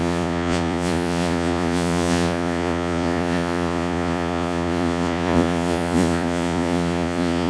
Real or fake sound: fake